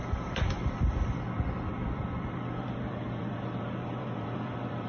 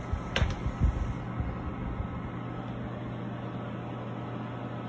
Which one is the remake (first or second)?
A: first